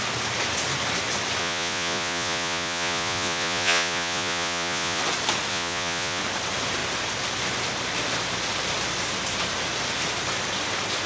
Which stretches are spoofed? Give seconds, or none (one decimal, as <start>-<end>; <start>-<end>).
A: 1.4-5.0; 5.5-6.2